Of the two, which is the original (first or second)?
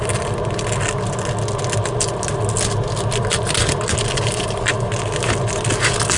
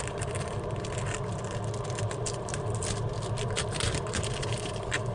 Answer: first